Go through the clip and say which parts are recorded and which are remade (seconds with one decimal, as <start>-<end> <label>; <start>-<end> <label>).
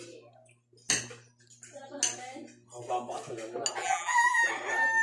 0.0-3.8 recorded; 3.8-4.5 remade; 4.5-5.0 recorded